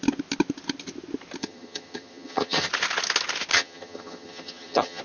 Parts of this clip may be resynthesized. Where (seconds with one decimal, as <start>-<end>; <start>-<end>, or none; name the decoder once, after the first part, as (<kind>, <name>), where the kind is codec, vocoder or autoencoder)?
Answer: 1.4-2.7 (vocoder, HiFi-GAN); 3.5-5.0